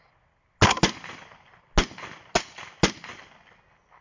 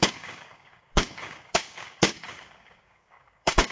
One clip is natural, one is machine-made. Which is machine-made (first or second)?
second